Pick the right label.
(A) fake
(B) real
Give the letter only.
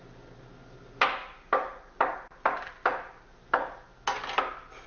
B